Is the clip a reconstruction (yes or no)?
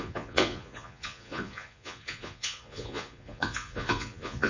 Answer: yes